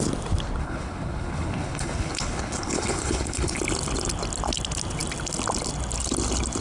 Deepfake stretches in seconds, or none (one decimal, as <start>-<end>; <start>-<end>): 0.6-3.6

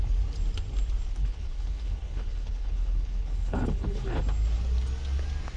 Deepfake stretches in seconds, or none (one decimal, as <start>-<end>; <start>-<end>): 1.2-4.2

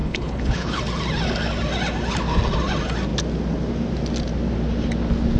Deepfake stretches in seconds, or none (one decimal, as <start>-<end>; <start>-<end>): 0.0-0.8

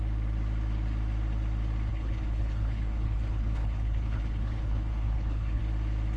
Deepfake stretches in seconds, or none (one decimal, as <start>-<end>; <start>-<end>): 1.9-5.6

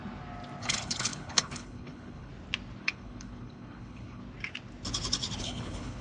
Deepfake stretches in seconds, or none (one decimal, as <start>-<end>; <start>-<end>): 0.6-2.3; 2.8-4.2; 5.4-6.0

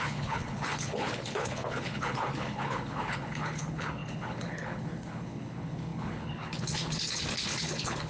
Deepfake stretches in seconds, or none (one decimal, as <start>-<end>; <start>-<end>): 0.0-8.1

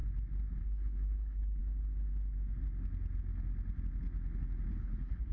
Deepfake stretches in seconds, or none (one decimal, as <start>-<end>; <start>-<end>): 0.6-1.6; 4.7-5.3